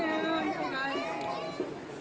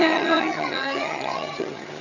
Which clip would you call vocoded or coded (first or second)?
second